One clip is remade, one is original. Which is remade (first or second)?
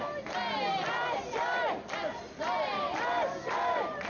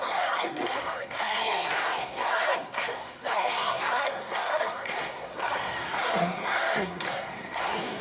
second